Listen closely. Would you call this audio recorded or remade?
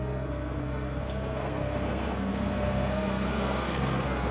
remade